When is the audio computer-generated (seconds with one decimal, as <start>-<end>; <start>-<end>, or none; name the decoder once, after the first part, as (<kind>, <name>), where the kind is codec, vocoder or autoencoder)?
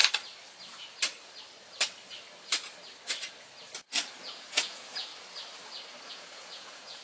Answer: 4.2-5.1 (vocoder, Vocos); 6.1-7.0